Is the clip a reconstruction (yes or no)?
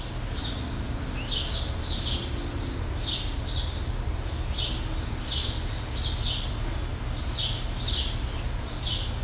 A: no